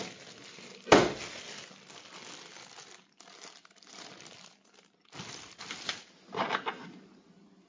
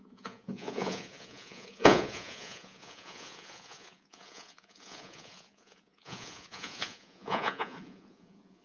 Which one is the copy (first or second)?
second